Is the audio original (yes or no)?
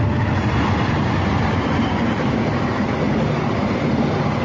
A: yes